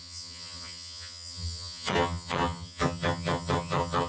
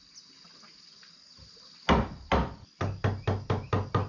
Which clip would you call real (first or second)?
second